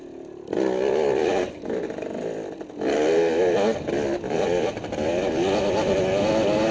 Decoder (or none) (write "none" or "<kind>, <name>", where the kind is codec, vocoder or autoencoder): none